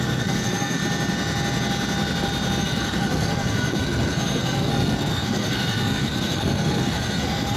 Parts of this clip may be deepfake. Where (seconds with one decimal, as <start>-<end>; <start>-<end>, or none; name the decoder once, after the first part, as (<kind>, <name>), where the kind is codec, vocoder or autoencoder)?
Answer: 0.0-0.8 (codec, SNAC); 2.6-7.6